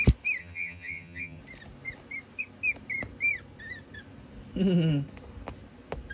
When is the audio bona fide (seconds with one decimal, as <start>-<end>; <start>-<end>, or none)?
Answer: 0.0-0.4; 1.4-6.1